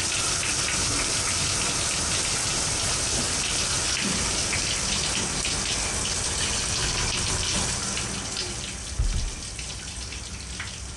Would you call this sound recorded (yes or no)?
yes